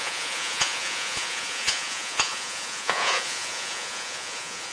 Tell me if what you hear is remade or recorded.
remade